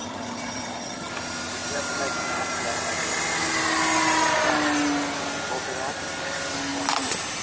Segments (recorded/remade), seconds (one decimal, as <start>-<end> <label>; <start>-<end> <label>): 0.0-1.1 remade; 1.1-7.4 recorded